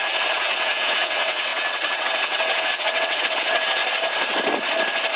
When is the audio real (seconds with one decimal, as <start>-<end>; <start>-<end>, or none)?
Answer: 3.8-5.2